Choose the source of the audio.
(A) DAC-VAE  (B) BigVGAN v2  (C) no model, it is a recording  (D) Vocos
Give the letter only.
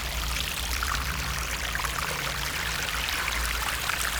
B